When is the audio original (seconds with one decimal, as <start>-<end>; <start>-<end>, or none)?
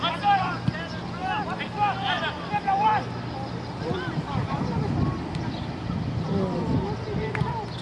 0.0-7.8